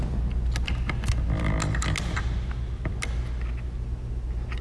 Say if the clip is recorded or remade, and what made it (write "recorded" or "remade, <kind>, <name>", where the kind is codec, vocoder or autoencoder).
recorded